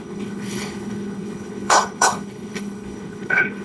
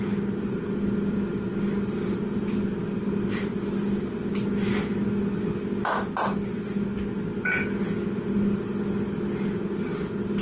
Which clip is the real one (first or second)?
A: second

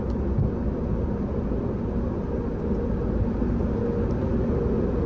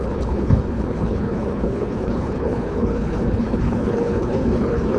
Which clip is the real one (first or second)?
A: first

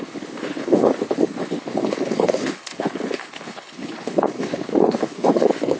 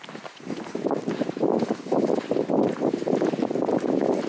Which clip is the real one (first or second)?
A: second